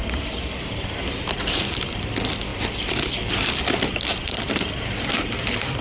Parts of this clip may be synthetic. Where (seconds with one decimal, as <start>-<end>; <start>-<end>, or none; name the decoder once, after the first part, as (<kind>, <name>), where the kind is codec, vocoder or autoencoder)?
0.0-0.7 (vocoder, BigVGAN v2); 2.5-5.8